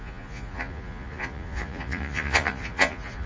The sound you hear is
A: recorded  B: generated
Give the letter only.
B